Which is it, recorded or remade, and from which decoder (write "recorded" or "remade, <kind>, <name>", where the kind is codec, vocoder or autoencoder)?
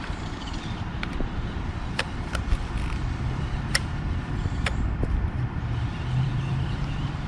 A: remade, vocoder, BigVGAN v2